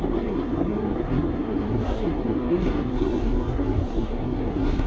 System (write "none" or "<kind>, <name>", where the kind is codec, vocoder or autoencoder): codec, SNAC